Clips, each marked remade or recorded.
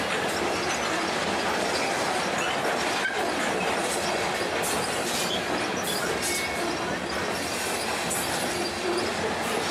recorded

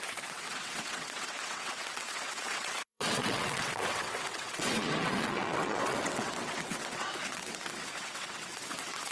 remade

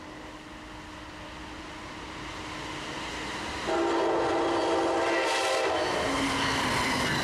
recorded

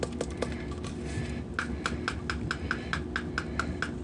recorded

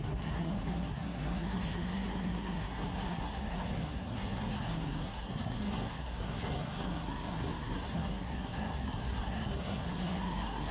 remade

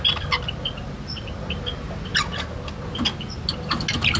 recorded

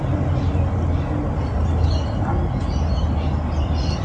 recorded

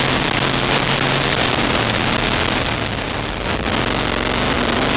recorded